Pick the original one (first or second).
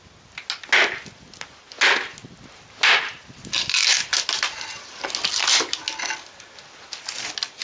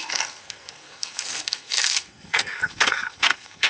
first